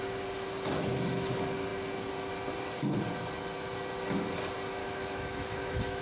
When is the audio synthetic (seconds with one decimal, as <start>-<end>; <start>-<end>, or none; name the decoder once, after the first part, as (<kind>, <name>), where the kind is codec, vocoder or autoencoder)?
4.8-6.0 (autoencoder, DAC-VAE)